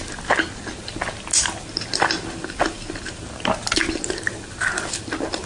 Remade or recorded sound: recorded